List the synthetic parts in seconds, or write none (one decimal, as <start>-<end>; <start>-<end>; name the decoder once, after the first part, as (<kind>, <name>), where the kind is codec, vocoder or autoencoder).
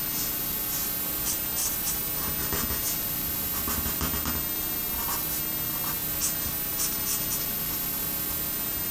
none